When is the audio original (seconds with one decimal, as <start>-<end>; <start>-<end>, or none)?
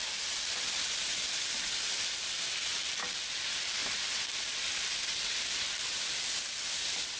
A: 2.3-3.8